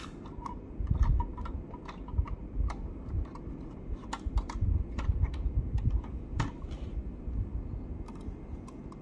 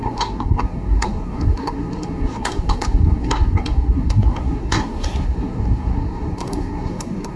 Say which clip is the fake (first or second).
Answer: second